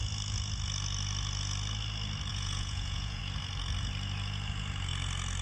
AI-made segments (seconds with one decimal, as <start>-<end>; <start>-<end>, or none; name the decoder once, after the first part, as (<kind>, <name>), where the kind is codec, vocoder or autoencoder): 2.3-3.2 (vocoder, Vocos)

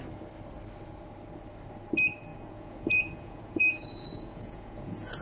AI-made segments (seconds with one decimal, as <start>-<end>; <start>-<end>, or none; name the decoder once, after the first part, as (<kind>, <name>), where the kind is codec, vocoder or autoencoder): 2.3-5.2 (vocoder, Vocos)